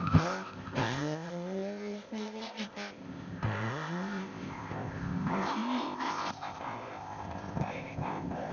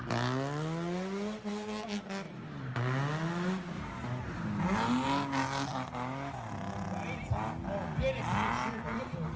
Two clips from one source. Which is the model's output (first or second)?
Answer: first